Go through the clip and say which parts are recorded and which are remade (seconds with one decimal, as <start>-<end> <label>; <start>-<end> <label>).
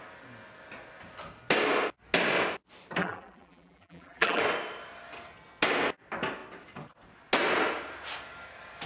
0.0-3.0 recorded; 3.0-4.4 remade; 4.4-8.9 recorded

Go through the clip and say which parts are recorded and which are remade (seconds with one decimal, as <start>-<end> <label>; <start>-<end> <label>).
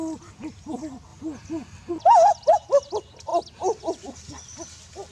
0.0-5.1 recorded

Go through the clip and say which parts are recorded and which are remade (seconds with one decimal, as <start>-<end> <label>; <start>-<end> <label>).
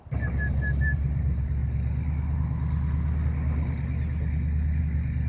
0.0-1.6 remade; 1.6-4.8 recorded; 4.8-5.3 remade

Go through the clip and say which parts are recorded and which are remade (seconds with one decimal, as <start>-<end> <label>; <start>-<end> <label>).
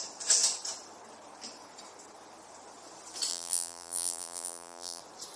0.0-3.3 recorded; 3.3-5.0 remade; 5.0-5.4 recorded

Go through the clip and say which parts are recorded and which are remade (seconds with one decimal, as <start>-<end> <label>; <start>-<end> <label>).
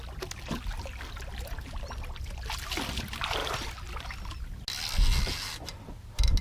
0.0-6.4 recorded